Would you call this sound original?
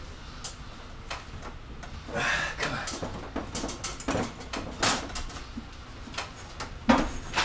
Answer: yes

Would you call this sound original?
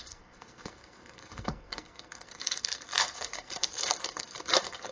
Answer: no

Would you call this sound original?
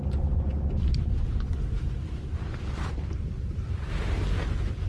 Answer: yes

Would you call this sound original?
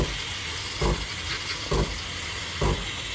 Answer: yes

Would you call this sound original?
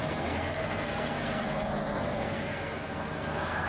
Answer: no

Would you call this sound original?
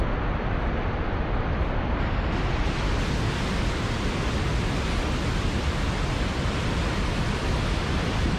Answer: yes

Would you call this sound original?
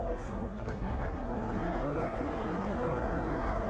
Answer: no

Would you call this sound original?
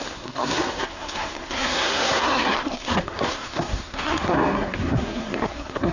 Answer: no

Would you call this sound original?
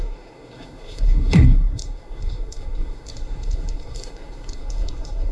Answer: no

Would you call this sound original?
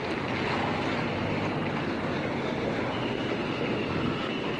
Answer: yes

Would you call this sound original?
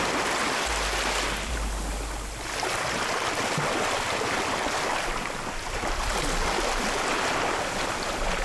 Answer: yes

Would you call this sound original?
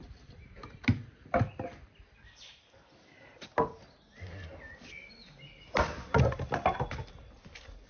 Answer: yes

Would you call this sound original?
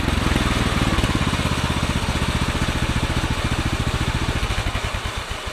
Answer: yes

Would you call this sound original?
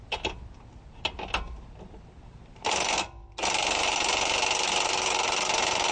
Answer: yes